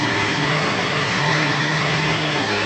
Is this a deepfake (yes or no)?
yes